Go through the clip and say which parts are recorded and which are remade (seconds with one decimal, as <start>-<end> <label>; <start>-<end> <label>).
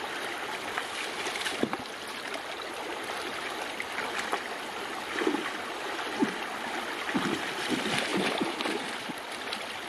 0.0-9.9 recorded